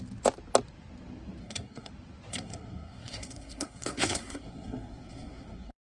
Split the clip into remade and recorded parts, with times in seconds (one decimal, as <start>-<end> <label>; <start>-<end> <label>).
0.0-1.4 recorded; 1.4-1.9 remade; 1.9-2.3 recorded; 2.3-6.0 remade